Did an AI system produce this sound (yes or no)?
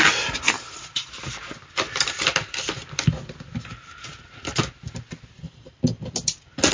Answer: no